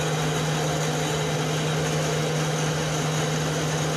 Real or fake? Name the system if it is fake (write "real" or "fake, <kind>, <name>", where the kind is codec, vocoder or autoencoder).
real